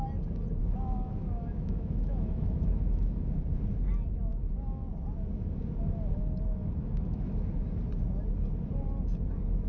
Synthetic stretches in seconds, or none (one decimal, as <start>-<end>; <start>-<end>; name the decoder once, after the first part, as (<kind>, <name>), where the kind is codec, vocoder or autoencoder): 0.6-3.3 (autoencoder, DAC-VAE); 6.6-7.5